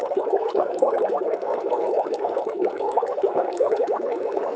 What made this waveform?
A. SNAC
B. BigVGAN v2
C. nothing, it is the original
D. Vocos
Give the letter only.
A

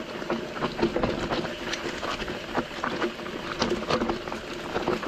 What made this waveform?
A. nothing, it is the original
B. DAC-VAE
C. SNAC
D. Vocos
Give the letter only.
A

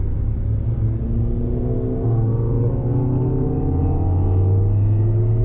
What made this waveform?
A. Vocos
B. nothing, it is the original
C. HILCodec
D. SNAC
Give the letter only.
B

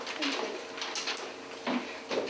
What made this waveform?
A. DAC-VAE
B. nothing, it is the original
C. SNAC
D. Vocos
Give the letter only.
B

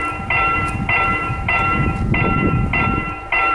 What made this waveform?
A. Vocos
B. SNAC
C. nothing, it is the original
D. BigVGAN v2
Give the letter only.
C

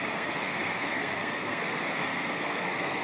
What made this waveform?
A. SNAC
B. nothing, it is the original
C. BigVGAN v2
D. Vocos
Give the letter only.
A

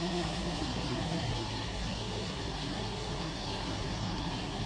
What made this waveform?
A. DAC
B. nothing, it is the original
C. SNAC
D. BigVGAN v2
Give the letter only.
C